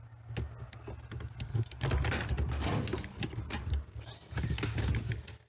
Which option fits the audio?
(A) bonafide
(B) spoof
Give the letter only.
A